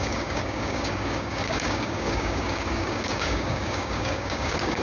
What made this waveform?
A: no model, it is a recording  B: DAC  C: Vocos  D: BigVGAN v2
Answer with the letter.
B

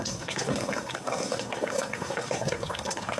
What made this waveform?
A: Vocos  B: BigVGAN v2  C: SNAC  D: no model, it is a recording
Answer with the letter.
C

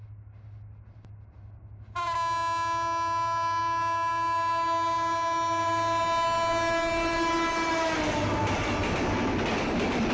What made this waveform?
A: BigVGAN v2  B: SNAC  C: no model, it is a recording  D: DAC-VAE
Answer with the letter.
C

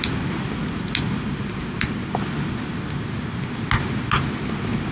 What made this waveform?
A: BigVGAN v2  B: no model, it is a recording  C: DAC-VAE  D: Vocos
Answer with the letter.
B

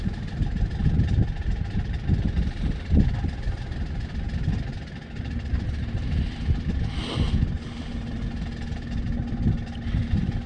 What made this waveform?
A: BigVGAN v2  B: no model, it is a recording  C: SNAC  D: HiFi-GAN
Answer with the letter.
B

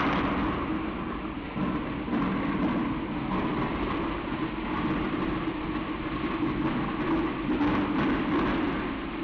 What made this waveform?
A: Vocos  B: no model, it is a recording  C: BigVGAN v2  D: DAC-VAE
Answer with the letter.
B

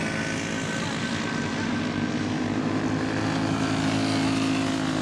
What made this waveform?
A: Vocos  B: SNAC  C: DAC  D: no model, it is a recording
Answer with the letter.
D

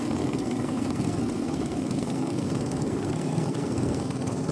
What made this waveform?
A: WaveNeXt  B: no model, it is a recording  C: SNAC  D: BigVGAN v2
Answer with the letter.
C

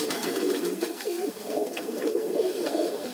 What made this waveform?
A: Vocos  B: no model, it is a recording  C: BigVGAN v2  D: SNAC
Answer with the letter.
D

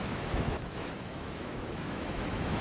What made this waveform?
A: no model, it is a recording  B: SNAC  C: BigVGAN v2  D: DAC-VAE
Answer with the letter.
D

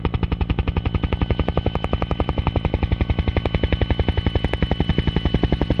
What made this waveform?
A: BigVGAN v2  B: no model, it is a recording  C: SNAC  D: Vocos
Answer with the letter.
B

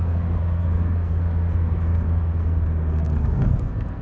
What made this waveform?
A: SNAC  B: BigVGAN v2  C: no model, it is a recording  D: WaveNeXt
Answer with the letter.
A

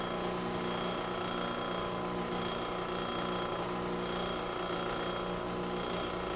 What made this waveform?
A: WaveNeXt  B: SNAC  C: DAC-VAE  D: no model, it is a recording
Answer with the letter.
D